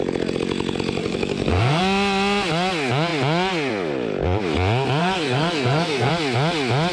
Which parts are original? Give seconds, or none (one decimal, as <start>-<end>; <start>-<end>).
0.0-1.0; 1.8-5.0; 6.1-6.9